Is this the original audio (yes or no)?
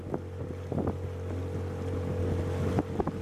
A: yes